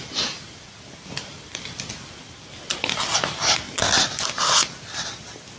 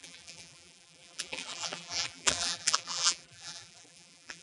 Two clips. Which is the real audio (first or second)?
first